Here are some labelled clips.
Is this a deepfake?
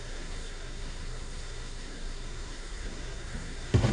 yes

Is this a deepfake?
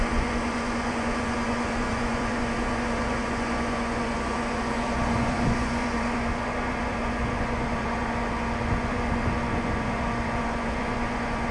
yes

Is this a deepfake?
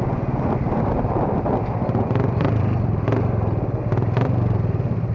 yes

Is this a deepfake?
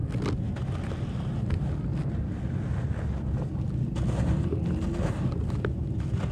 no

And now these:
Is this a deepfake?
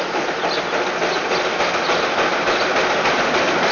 no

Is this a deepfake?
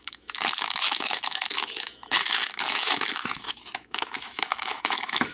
yes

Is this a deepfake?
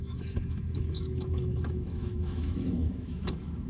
yes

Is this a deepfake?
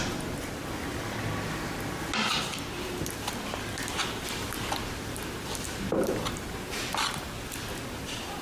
no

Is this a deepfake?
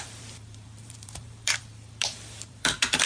yes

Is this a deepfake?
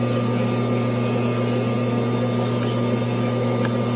no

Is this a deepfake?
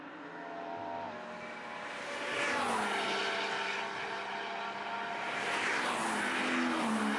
no